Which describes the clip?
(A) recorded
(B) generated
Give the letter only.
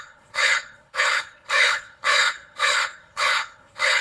B